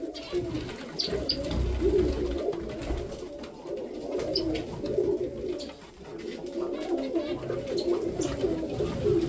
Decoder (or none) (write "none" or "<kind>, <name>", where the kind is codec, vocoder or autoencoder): none